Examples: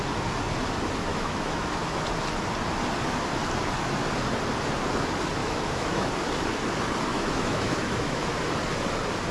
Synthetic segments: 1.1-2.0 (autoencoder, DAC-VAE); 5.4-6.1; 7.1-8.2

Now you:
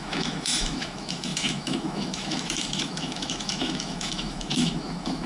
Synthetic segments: 0.0-5.3 (autoencoder, DAC-VAE)

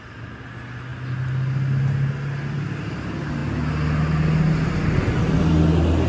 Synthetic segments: none

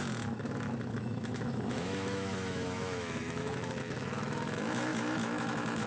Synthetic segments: 0.0-5.9 (autoencoder, DAC-VAE)

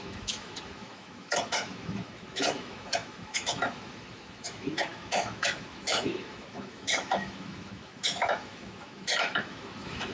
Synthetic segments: 0.0-10.1 (autoencoder, DAC-VAE)

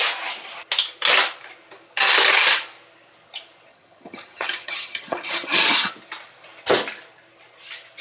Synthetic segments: 3.7-5.9 (vocoder, HiFi-GAN)

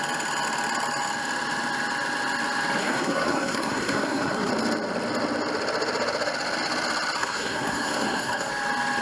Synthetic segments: 2.8-4.5 (codec, SNAC); 7.2-8.5